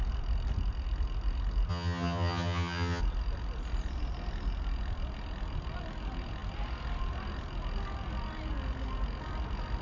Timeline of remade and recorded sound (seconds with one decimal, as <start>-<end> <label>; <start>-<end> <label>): 0.0-1.7 recorded; 1.7-3.0 remade; 3.0-9.8 recorded